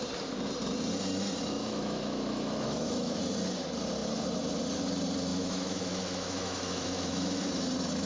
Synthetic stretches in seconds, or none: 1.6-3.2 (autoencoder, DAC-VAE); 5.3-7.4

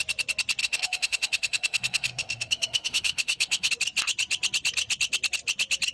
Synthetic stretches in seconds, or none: 0.6-3.7 (autoencoder, DAC-VAE)